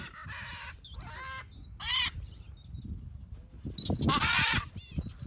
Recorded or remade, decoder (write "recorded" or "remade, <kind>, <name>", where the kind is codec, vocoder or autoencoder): recorded